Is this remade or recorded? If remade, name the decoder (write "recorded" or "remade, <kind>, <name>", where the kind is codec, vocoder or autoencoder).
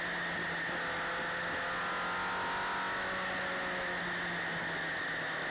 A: recorded